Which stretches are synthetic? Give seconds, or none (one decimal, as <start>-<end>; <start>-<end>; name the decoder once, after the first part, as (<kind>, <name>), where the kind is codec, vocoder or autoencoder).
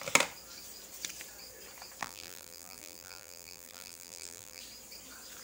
2.0-4.6 (vocoder, BigVGAN v2)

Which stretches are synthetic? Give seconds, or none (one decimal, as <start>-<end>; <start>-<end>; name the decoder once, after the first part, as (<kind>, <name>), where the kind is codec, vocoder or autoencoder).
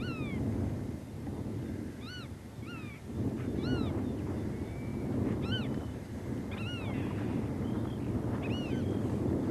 none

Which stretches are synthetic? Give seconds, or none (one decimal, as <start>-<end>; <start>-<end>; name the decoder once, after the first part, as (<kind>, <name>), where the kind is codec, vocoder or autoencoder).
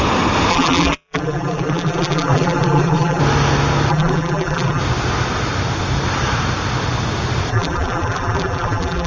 0.5-3.2 (vocoder, BigVGAN v2); 3.9-4.8; 7.5-9.1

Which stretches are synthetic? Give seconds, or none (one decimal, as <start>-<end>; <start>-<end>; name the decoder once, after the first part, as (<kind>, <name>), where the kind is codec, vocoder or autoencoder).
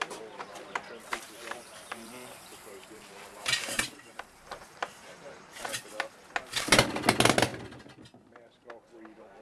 1.1-5.8 (vocoder, BigVGAN v2)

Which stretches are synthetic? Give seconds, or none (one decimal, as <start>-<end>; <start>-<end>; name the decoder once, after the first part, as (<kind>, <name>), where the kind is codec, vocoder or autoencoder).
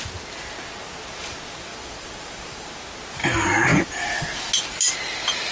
1.7-2.8 (vocoder, BigVGAN v2); 3.7-4.2